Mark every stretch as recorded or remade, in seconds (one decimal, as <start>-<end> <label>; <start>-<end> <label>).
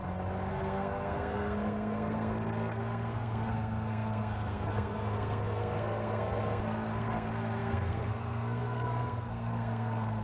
0.0-0.5 recorded; 0.5-10.2 remade